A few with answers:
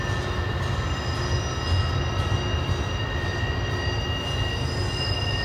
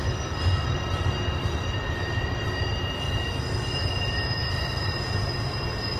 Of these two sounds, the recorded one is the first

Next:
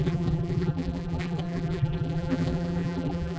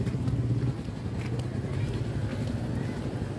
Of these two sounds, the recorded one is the second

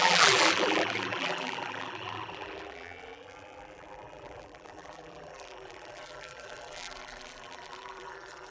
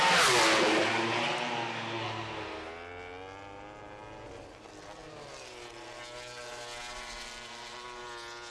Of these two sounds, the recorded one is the second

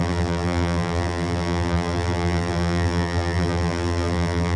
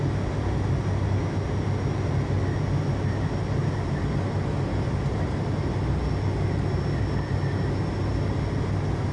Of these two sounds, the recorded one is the second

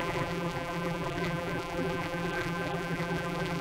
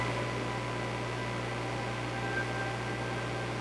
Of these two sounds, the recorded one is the second